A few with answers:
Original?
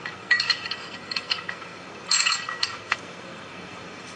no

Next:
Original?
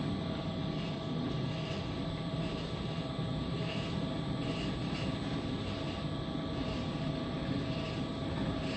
yes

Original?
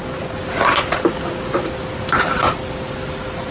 yes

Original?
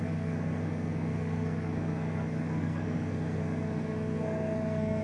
no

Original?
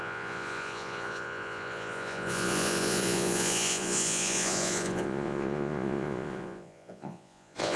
no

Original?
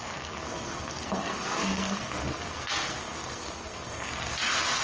no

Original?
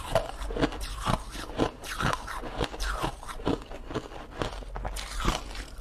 yes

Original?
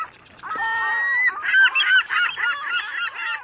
yes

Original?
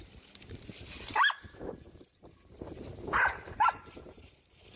no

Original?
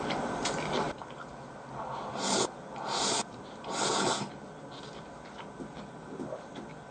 yes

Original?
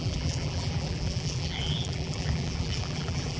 no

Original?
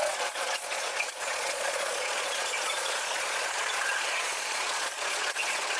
no